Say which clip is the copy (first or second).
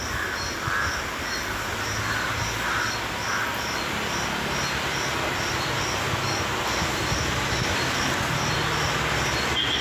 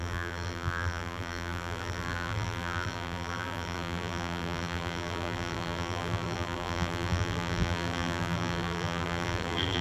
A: second